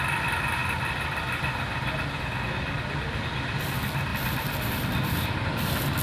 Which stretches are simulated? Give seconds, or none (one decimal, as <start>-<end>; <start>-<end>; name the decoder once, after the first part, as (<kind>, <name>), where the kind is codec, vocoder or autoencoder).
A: 0.6-2.1 (vocoder, BigVGAN v2); 4.1-6.0